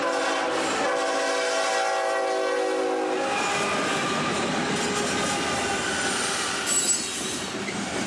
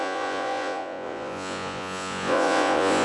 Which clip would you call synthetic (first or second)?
second